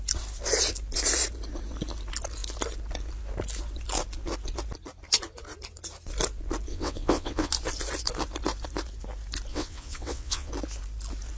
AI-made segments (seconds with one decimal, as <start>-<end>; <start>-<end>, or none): 6.7-7.5; 9.5-10.5